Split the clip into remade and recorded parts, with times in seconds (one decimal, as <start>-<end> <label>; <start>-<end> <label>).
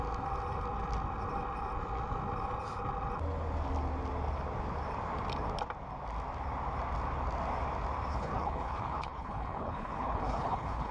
0.0-8.1 recorded; 8.1-10.9 remade